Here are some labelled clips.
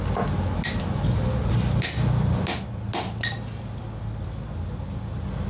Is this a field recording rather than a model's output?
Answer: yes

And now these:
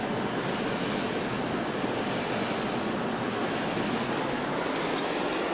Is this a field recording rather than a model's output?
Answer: yes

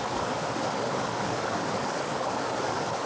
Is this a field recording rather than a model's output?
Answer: no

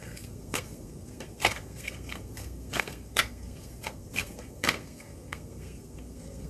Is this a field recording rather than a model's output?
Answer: no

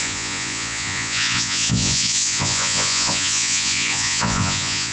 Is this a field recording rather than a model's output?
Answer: no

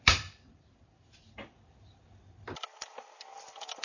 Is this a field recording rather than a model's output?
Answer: no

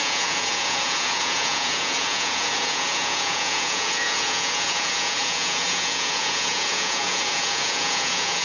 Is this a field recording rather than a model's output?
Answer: no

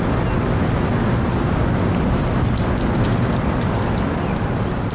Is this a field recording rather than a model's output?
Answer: yes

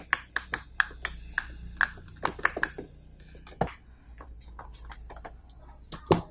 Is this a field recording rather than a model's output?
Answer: yes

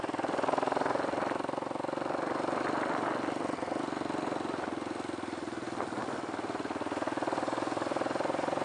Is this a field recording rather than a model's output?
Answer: yes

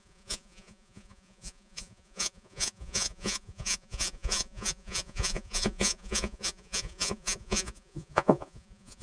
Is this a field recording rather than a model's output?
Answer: no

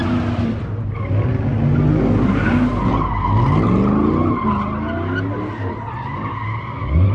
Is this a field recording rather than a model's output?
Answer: yes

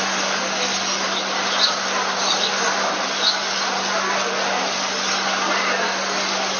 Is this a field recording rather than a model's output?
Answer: yes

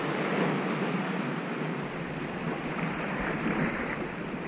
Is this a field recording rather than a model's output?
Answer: yes